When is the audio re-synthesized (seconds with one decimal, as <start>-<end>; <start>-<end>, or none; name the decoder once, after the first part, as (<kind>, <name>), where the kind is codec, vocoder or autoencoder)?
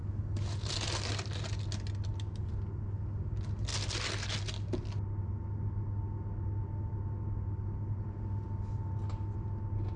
none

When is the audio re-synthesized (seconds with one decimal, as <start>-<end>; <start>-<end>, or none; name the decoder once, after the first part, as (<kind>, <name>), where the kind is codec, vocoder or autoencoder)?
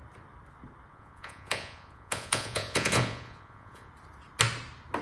0.9-3.9 (vocoder, Vocos)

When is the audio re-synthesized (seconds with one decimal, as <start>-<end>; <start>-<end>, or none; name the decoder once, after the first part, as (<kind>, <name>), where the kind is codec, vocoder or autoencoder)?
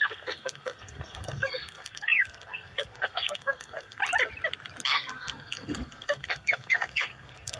0.0-4.0 (codec, SNAC); 4.9-7.6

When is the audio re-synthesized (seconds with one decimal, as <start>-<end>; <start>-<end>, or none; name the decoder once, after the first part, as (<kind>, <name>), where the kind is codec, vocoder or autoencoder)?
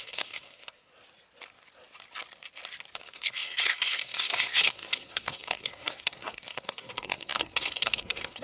0.0-0.9 (codec, SNAC); 3.0-8.4